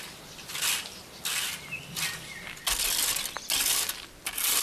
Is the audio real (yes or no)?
yes